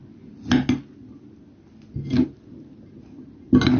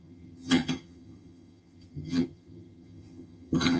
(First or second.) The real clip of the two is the first